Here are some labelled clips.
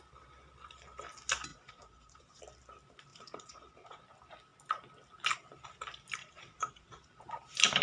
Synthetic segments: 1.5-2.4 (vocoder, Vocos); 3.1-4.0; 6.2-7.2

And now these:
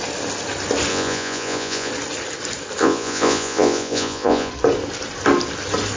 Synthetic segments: 0.9-1.9 (vocoder, Vocos); 2.8-4.5

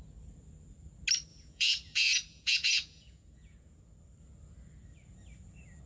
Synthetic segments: 1.3-3.9 (vocoder, Vocos)

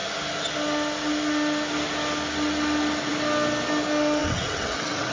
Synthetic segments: 4.2-5.1 (vocoder, WaveNeXt)